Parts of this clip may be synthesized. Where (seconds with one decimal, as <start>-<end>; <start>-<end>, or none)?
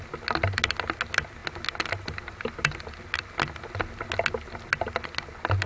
none